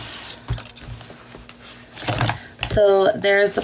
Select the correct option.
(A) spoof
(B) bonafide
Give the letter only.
B